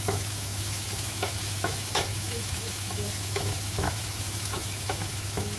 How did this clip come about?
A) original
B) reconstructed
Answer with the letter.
B